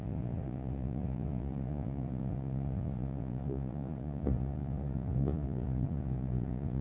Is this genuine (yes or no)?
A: no